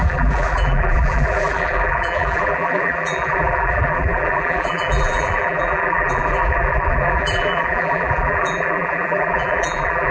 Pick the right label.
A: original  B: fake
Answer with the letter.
B